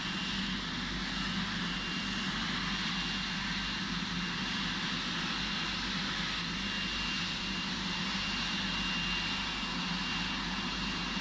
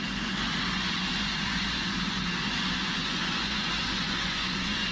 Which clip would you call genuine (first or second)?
first